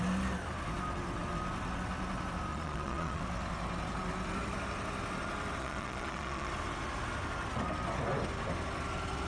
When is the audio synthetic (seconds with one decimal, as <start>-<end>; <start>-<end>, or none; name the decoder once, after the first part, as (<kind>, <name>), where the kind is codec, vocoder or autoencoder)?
2.5-3.2 (vocoder, Vocos); 5.6-6.5